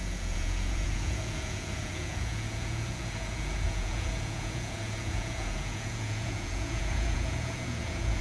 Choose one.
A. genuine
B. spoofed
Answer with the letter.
B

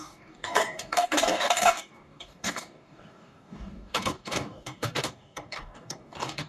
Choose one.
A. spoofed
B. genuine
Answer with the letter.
A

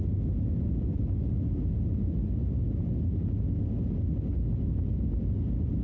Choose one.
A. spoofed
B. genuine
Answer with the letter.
B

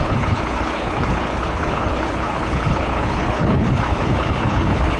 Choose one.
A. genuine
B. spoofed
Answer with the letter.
B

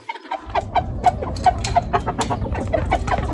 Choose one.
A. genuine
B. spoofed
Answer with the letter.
A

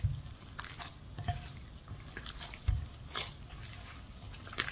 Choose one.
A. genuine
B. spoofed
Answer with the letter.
A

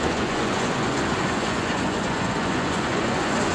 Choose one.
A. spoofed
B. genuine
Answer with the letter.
A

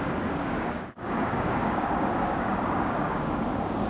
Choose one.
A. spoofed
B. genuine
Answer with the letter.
A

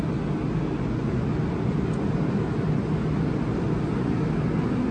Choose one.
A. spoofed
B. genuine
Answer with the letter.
B